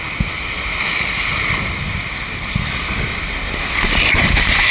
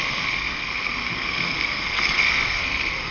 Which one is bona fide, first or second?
first